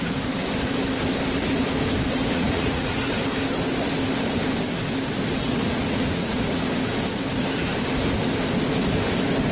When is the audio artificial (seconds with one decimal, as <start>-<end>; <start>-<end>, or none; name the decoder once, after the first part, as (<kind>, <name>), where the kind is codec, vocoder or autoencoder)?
2.2-3.0 (vocoder, Vocos); 5.4-6.8